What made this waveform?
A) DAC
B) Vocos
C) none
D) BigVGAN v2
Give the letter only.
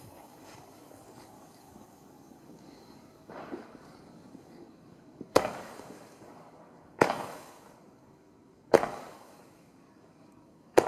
A